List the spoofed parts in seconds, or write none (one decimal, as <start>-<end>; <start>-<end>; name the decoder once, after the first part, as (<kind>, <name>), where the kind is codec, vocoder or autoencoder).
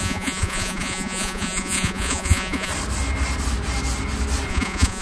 0.0-2.7 (vocoder, Vocos); 4.5-5.0